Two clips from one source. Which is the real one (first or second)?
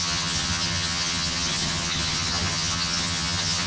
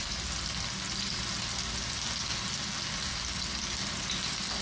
second